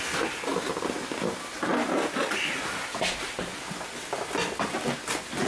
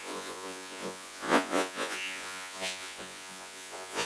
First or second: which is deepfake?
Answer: second